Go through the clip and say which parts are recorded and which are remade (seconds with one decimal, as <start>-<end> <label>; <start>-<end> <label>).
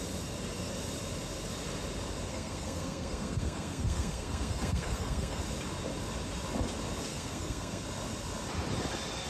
0.0-2.3 recorded; 2.3-5.4 remade; 5.4-7.1 recorded; 7.1-7.8 remade; 7.8-9.3 recorded